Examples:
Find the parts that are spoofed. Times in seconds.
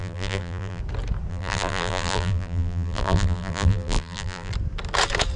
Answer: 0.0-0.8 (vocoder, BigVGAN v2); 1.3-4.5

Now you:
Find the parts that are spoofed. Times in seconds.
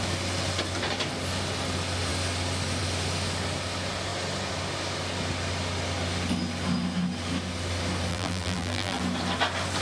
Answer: 8.1-9.0 (vocoder, BigVGAN v2)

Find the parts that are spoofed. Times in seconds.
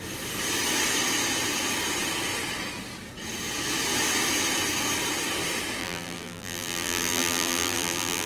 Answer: 5.8-8.3 (vocoder, BigVGAN v2)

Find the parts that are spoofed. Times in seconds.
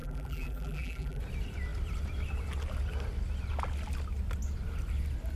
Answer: 0.0-1.2 (vocoder, BigVGAN v2)